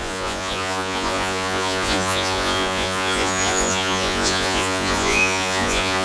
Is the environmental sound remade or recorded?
remade